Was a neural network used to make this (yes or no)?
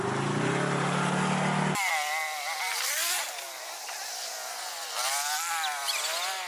no